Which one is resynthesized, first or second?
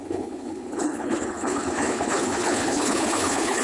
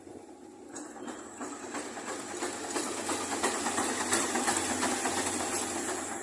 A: first